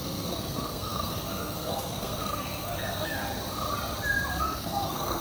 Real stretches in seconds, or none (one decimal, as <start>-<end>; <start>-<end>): 3.2-4.4